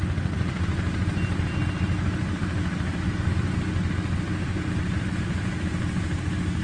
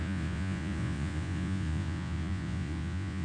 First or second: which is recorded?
first